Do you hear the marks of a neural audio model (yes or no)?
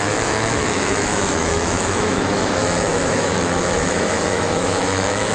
yes